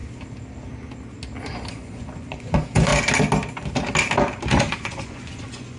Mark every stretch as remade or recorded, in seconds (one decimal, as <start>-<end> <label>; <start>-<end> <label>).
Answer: 0.0-1.7 recorded; 1.7-2.9 remade; 2.9-4.6 recorded; 4.6-5.8 remade